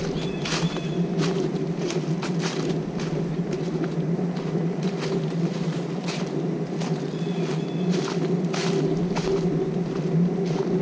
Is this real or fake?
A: real